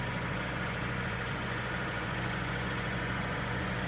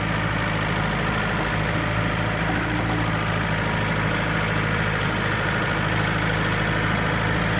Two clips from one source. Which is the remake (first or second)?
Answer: first